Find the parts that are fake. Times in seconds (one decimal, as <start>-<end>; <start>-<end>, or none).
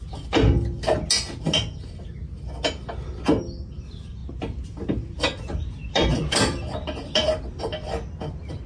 4.2-7.6